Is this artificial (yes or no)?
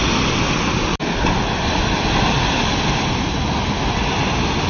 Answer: no